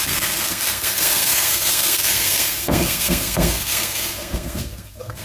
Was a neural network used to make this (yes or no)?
yes